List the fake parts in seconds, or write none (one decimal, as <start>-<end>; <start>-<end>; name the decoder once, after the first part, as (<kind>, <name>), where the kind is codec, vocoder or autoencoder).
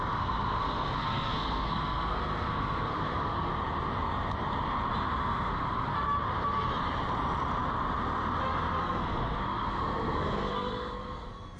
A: 0.0-3.5 (codec, SNAC); 5.2-5.9; 8.8-11.6